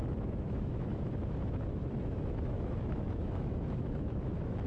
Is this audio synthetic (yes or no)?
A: yes